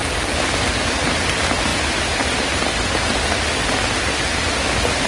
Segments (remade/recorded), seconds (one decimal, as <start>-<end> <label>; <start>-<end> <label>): 0.0-5.1 recorded